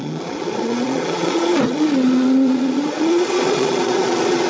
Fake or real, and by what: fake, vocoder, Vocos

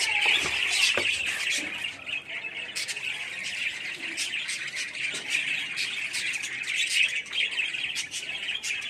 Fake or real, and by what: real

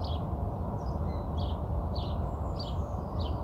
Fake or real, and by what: real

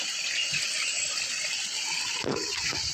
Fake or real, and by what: real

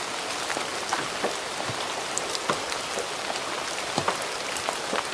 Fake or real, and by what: fake, vocoder, BigVGAN v2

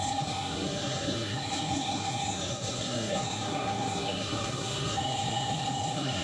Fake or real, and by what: fake, codec, SNAC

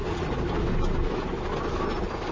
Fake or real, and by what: real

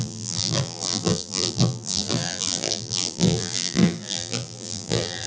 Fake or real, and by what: fake, vocoder, BigVGAN v2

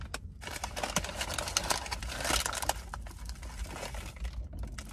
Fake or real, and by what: real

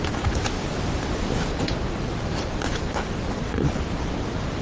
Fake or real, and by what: real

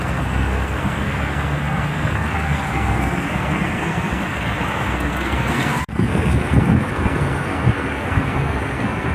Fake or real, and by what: fake, codec, SNAC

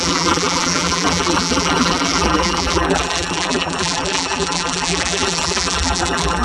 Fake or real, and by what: fake, vocoder, BigVGAN v2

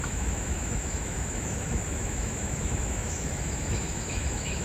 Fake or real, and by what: fake, autoencoder, DAC-VAE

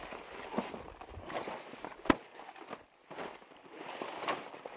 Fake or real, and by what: real